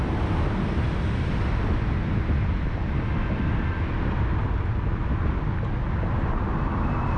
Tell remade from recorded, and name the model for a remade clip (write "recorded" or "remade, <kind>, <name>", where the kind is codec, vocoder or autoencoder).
recorded